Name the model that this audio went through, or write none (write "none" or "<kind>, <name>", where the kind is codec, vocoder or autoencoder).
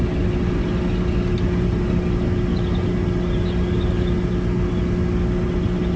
none